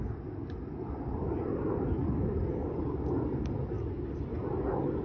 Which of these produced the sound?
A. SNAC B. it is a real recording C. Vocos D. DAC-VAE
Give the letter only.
B